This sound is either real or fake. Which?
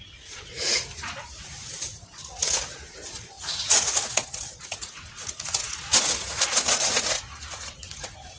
fake